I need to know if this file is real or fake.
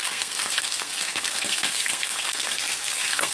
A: fake